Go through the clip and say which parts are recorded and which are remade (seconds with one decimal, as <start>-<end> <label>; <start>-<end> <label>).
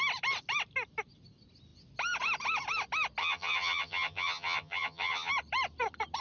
0.0-3.2 recorded; 3.2-5.3 remade; 5.3-6.2 recorded